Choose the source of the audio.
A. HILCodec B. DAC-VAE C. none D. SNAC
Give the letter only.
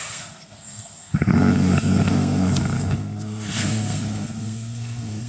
D